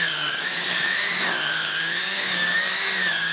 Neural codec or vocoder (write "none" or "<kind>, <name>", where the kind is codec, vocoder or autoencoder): codec, DAC